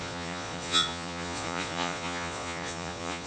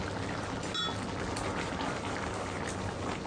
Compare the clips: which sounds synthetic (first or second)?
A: first